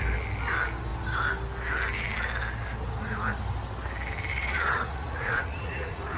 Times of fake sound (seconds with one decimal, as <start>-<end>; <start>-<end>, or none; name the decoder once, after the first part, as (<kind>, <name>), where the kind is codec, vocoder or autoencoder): 4.3-6.2 (vocoder, Vocos)